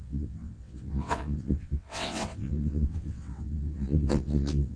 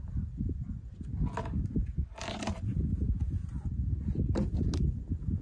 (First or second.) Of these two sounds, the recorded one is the second